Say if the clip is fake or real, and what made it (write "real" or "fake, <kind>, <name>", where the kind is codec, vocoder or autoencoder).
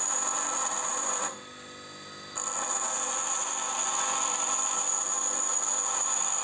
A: real